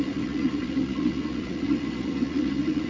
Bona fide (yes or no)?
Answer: no